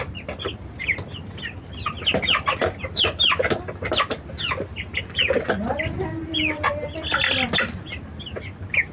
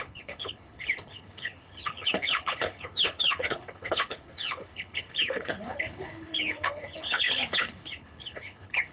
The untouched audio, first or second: first